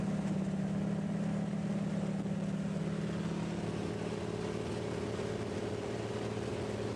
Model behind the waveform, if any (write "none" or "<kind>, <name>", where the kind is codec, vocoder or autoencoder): none